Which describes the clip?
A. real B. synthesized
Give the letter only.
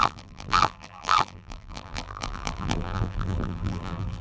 B